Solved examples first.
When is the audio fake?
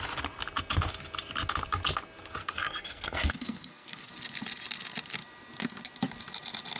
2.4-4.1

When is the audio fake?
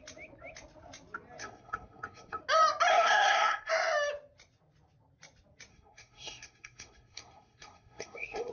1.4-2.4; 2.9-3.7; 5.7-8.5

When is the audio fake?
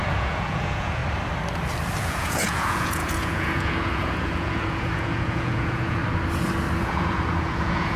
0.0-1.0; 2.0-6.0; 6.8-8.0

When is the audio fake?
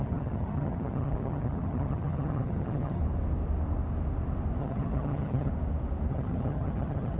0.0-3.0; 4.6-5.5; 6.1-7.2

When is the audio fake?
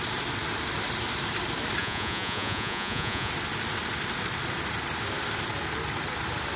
1.8-3.3